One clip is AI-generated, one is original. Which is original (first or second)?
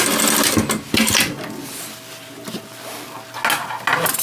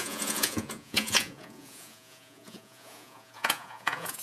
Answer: first